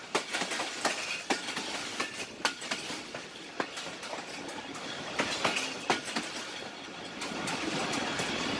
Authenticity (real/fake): real